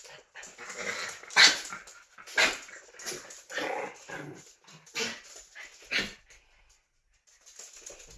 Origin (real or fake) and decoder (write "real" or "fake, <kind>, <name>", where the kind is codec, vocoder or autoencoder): real